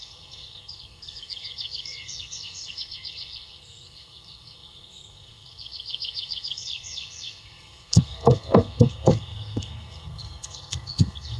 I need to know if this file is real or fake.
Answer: fake